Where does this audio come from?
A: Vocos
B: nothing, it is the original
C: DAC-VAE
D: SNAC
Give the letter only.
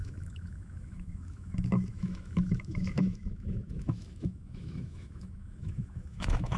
C